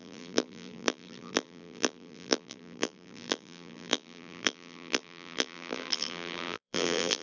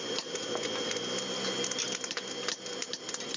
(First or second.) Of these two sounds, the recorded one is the second